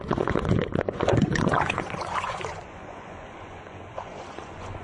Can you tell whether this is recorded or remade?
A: remade